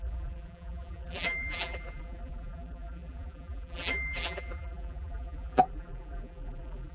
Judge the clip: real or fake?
fake